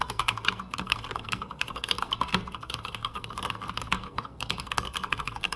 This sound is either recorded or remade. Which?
remade